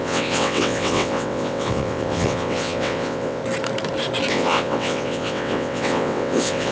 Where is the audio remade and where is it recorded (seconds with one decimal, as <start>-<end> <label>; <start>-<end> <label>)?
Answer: 0.0-3.4 remade; 3.4-4.3 recorded; 4.3-6.7 remade